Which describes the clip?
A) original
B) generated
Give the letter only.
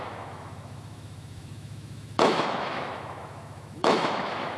B